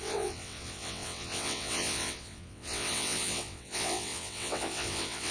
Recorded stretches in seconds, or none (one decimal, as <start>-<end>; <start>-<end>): none